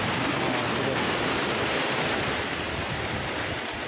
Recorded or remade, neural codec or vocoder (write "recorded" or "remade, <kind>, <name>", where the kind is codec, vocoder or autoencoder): recorded